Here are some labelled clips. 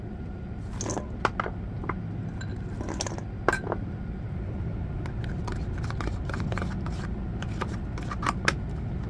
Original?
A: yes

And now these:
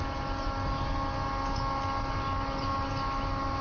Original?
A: yes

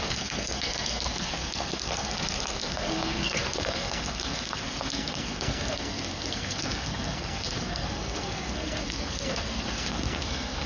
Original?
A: no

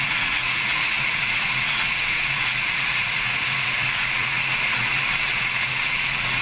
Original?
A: no